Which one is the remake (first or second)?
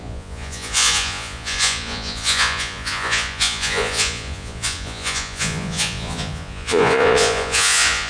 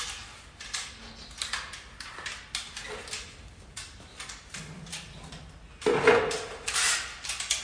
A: first